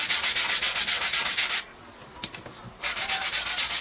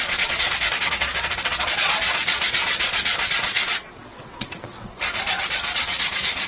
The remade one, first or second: second